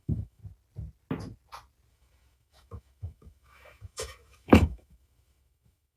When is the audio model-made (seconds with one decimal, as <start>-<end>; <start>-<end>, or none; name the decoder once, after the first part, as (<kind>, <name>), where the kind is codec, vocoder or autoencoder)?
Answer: 0.0-0.4 (autoencoder, DAC-VAE); 1.9-6.0